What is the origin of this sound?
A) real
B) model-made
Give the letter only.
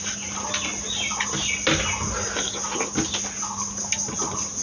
A